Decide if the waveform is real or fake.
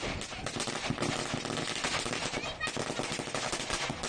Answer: real